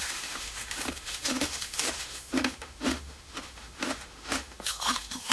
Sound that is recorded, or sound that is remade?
remade